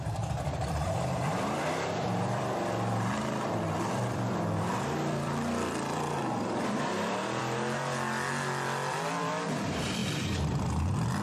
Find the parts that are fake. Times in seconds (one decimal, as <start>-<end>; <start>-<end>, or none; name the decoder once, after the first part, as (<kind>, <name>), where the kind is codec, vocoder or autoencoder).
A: 0.0-7.4 (vocoder, BigVGAN v2); 8.9-11.2